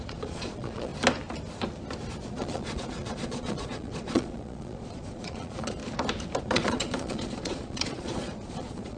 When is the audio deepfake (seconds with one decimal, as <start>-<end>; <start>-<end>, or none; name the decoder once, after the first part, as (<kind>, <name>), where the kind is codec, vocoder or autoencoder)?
0.0-0.9 (vocoder, Vocos); 2.3-5.8; 6.4-9.0